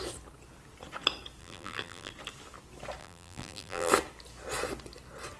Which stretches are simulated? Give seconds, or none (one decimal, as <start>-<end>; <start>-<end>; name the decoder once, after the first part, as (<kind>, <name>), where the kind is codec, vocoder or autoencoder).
1.4-2.1 (vocoder, BigVGAN v2); 3.0-3.9